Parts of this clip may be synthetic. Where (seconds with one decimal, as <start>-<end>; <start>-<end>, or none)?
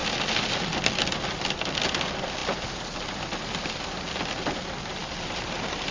none